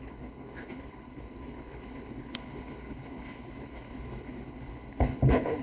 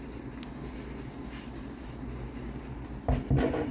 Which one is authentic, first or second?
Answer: second